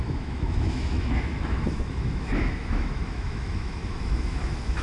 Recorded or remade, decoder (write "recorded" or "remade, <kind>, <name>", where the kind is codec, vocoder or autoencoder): remade, autoencoder, DAC-VAE